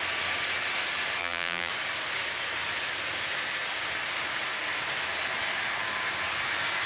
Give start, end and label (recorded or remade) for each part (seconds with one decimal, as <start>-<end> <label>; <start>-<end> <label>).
0.0-1.2 recorded; 1.2-1.7 remade; 1.7-6.9 recorded